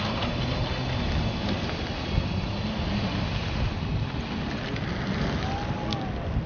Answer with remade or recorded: recorded